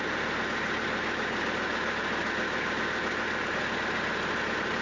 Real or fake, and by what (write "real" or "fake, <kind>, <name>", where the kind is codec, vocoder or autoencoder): real